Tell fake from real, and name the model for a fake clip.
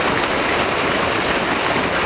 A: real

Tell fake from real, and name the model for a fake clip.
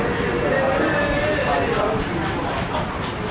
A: real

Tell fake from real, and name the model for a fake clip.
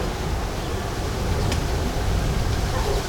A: real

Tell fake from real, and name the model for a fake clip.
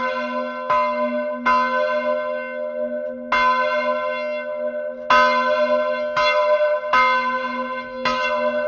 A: real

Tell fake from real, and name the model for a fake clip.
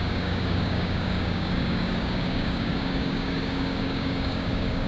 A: fake, codec, DAC